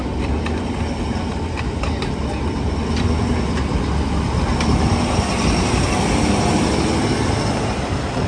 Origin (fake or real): real